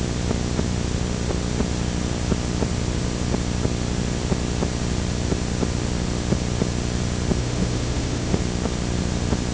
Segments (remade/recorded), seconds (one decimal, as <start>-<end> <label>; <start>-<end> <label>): 0.0-7.4 recorded; 7.4-8.4 remade; 8.4-9.5 recorded